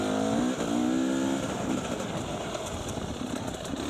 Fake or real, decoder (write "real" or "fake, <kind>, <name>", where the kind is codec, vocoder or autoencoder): real